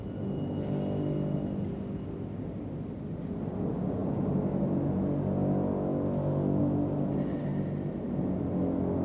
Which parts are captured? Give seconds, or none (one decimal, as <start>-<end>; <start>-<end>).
0.0-9.0